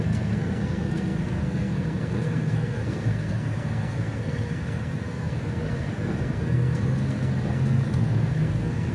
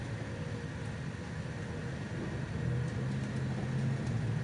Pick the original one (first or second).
second